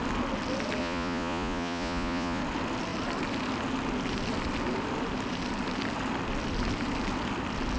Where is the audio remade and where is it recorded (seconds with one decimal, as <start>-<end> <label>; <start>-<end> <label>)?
0.0-0.8 recorded; 0.8-2.4 remade; 2.4-7.8 recorded